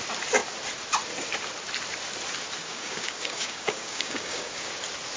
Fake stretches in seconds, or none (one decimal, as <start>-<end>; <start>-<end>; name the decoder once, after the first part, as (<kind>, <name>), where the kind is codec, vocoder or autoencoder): 2.6-4.7 (codec, DAC)